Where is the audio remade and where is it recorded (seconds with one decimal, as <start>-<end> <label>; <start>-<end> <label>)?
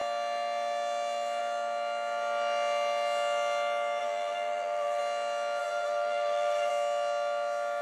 0.0-4.0 recorded; 4.0-5.0 remade; 5.0-5.6 recorded; 5.6-6.7 remade; 6.7-7.8 recorded